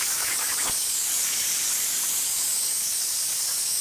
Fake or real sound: fake